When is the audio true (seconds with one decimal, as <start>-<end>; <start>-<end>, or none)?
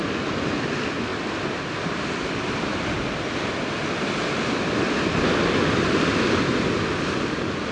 0.0-7.7